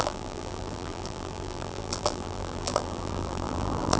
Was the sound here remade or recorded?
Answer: remade